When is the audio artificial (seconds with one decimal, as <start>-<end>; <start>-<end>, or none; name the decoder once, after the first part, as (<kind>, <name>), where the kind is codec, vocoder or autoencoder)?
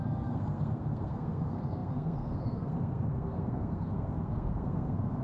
0.0-5.2 (codec, SNAC)